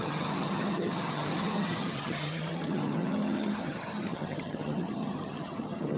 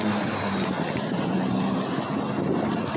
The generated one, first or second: first